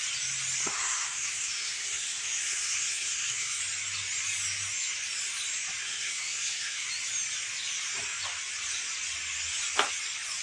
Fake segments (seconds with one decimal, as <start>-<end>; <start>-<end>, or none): 0.7-3.6; 5.8-6.9